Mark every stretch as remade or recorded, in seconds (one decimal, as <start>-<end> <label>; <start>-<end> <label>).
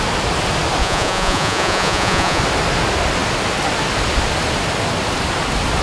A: 0.0-0.8 recorded; 0.8-2.4 remade; 2.4-5.8 recorded